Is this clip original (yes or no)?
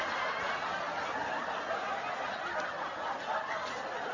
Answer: yes